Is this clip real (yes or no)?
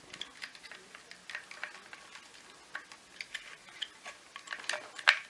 yes